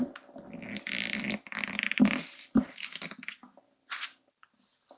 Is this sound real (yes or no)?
yes